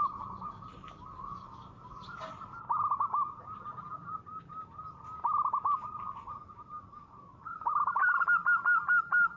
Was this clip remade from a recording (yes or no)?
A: no